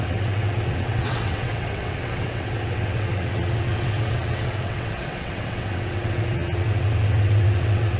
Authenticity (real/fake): fake